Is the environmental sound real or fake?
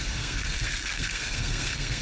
fake